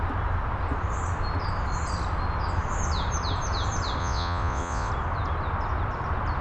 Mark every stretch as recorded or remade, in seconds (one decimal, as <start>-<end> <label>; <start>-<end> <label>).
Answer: 0.0-4.0 recorded; 4.0-4.9 remade; 4.9-6.4 recorded